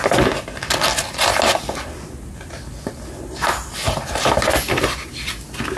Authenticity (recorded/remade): recorded